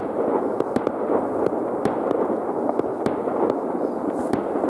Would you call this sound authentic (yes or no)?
yes